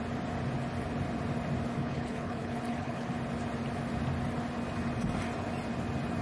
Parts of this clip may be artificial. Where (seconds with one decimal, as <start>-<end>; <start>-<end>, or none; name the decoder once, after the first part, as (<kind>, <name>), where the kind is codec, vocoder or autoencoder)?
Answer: 1.8-3.1 (codec, HILCodec)